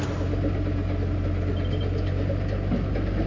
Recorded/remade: recorded